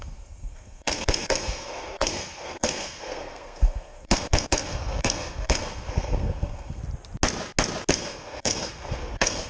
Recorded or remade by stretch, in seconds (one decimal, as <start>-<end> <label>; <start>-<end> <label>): 0.0-6.8 remade; 6.8-7.9 recorded; 7.9-9.5 remade